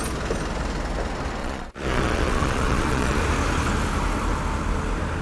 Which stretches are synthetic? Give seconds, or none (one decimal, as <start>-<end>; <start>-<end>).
1.4-3.2